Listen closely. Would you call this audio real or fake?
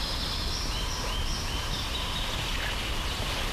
real